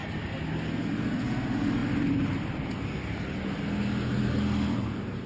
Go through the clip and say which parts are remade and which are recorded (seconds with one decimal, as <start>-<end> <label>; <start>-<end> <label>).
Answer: 0.0-5.3 recorded

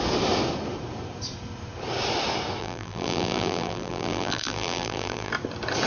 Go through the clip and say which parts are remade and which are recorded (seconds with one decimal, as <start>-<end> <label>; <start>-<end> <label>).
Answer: 0.0-2.6 recorded; 2.6-5.3 remade; 5.3-5.9 recorded

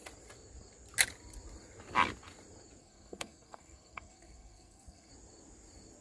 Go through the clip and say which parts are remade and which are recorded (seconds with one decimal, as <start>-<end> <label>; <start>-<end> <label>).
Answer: 0.0-2.8 recorded; 2.8-5.1 remade; 5.1-6.0 recorded